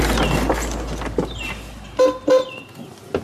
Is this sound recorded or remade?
recorded